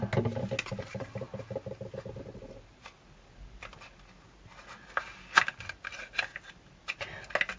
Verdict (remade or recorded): recorded